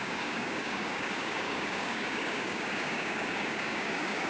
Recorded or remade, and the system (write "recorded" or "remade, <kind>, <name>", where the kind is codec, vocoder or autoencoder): remade, codec, DAC